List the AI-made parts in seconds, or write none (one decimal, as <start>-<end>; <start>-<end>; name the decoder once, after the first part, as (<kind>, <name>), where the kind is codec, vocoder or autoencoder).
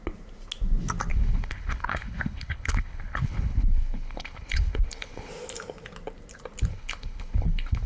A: 1.1-5.3 (codec, HILCodec); 6.7-7.9